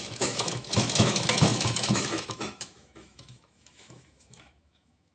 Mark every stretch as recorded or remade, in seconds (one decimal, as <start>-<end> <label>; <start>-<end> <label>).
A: 0.0-5.1 remade